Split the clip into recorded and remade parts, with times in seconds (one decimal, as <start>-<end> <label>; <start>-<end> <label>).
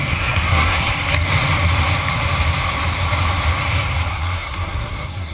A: 0.0-0.9 remade; 0.9-4.1 recorded; 4.1-5.3 remade